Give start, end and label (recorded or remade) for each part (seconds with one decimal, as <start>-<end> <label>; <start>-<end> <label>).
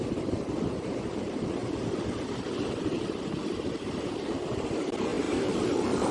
0.0-1.6 remade; 1.6-3.7 recorded; 3.7-6.1 remade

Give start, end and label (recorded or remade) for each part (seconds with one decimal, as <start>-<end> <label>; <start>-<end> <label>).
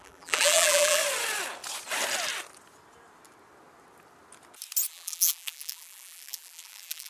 0.0-1.0 remade; 1.0-4.9 recorded; 4.9-7.1 remade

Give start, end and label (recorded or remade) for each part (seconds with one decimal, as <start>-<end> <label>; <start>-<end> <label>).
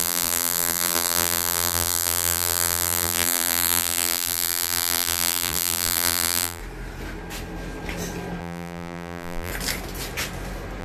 0.0-6.6 remade; 6.6-8.4 recorded; 8.4-9.5 remade; 9.5-10.8 recorded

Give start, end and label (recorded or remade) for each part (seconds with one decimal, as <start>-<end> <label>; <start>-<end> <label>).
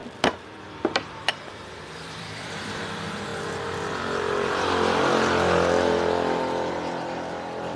0.0-3.3 remade; 3.3-6.7 recorded; 6.7-7.8 remade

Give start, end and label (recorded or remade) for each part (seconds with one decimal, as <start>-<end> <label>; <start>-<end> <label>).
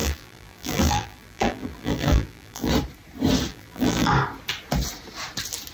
0.0-2.7 remade; 2.7-3.5 recorded; 3.5-4.1 remade; 4.1-5.7 recorded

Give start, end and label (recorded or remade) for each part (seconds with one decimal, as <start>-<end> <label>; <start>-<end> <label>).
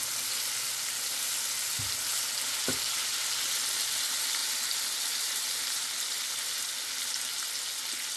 0.0-4.4 recorded; 4.4-5.9 remade; 5.9-8.2 recorded